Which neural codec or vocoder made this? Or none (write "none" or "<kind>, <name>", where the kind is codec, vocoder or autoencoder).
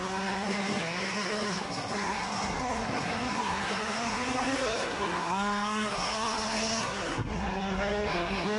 codec, SNAC